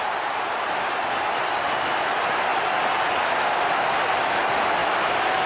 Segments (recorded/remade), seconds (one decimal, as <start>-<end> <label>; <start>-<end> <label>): 0.0-5.5 recorded